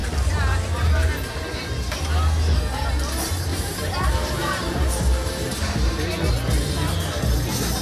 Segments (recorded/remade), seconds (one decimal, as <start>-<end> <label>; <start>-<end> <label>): 0.0-3.5 recorded; 3.5-5.9 remade; 5.9-7.8 recorded